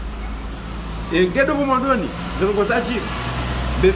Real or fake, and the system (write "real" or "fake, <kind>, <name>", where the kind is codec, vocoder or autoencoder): real